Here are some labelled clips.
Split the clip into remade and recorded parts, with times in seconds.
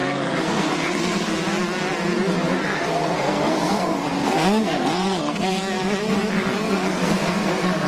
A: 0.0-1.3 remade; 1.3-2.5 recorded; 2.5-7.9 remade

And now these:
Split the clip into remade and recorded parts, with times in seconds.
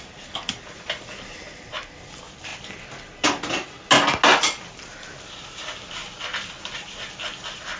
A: 0.0-2.5 remade; 2.5-5.2 recorded; 5.2-6.0 remade; 6.0-6.5 recorded; 6.5-7.8 remade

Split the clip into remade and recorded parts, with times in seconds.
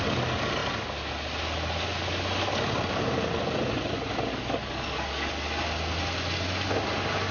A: 0.0-4.3 recorded; 4.3-5.3 remade; 5.3-7.3 recorded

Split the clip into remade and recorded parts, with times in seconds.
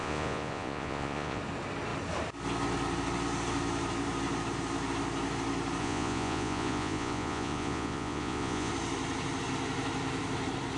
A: 0.0-1.4 remade; 1.4-5.8 recorded; 5.8-8.7 remade; 8.7-10.8 recorded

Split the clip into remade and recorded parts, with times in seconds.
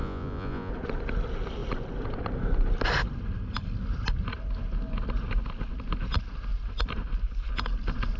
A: 0.0-0.7 remade; 0.7-8.2 recorded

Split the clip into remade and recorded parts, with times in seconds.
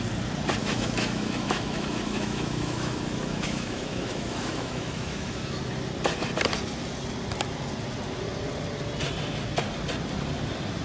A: 0.0-0.6 recorded; 0.6-5.6 remade; 5.6-10.8 recorded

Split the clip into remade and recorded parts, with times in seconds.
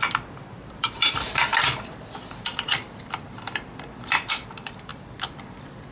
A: 0.0-5.9 remade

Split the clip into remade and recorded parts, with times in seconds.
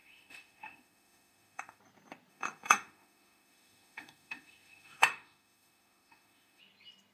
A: 0.0-1.8 remade; 1.8-2.3 recorded; 2.3-6.6 remade; 6.6-7.1 recorded